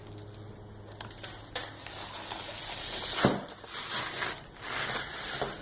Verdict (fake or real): real